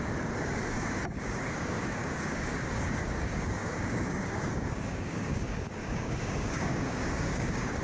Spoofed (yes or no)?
yes